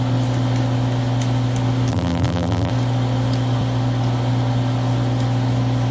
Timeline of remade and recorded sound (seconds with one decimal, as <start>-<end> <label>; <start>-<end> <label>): 0.0-1.9 recorded; 1.9-2.7 remade; 2.7-5.9 recorded